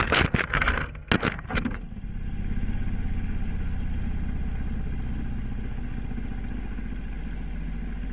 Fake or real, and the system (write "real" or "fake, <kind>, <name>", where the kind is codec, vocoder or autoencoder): real